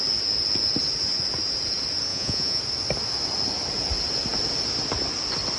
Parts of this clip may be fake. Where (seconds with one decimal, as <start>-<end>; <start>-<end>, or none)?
2.1-2.6